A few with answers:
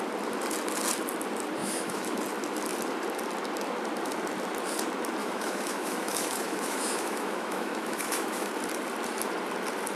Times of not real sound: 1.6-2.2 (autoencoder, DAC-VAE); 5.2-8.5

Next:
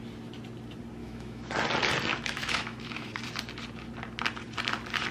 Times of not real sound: 1.0-1.5 (autoencoder, DAC-VAE); 2.1-3.1

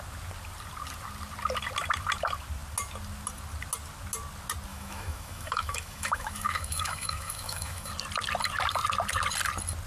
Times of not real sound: 4.7-7.9 (autoencoder, DAC-VAE)